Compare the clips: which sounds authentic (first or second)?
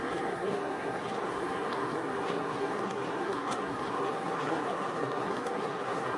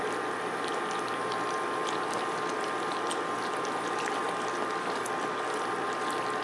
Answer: second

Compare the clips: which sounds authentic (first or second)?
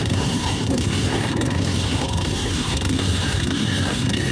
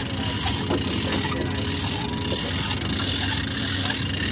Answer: second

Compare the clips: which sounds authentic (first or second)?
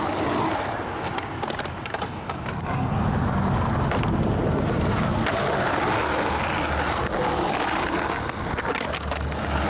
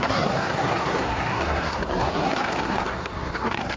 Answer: first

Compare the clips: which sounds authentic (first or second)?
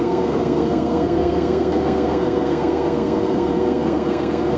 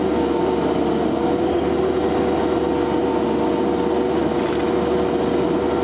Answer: second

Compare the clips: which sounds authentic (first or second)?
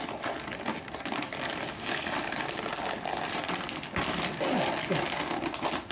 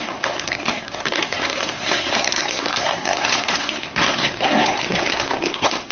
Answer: first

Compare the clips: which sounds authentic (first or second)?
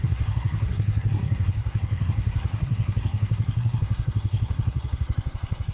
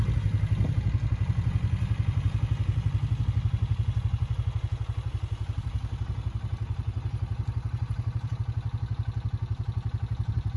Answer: second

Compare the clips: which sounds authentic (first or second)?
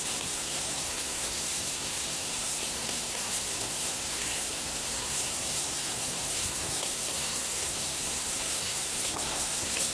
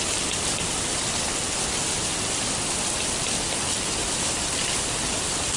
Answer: second